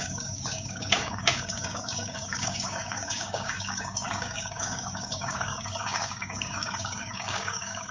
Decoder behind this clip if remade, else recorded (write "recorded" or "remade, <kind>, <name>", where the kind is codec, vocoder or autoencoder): remade, codec, DAC